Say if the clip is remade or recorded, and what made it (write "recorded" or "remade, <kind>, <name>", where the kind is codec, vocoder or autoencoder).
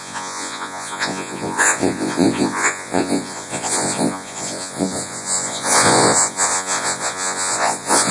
remade, vocoder, Vocos